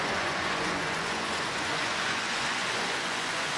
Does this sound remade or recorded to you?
remade